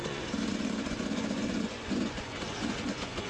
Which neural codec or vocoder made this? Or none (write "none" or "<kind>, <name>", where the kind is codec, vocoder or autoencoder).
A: vocoder, Vocos